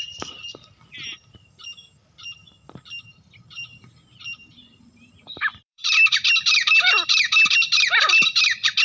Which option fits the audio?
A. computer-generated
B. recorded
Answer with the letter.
A